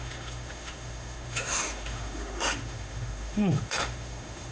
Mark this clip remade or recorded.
remade